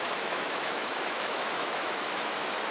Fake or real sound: fake